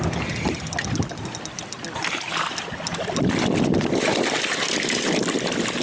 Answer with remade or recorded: remade